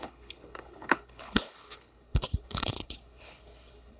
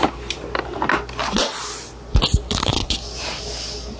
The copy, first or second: first